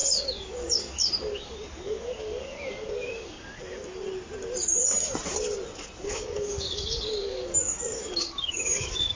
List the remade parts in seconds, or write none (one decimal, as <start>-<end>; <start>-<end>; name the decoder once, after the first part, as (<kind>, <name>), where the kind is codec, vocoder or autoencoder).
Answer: 0.0-3.8 (codec, DAC); 6.0-9.2